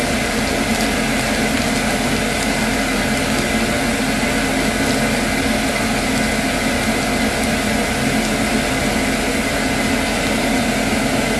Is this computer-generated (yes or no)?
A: no